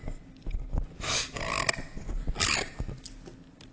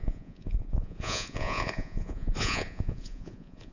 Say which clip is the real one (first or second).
first